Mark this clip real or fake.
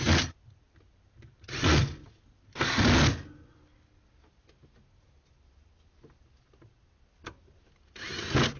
real